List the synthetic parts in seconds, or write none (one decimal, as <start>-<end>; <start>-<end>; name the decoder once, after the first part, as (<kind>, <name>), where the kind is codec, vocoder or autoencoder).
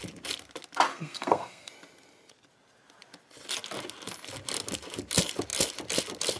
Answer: 0.9-1.7 (codec, SNAC)